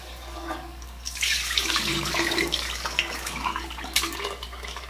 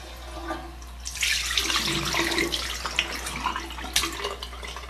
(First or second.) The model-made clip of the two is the first